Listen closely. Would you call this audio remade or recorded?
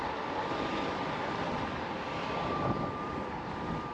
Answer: remade